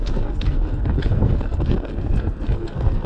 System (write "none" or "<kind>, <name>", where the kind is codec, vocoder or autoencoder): codec, SNAC